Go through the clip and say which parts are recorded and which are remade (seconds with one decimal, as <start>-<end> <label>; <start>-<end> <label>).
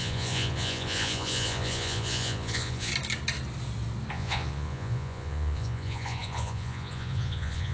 0.0-2.9 remade; 2.9-4.1 recorded; 4.1-7.7 remade